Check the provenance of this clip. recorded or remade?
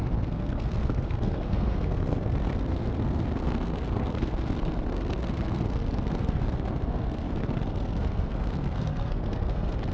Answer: remade